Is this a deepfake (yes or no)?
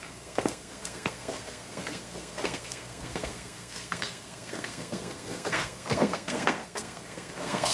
yes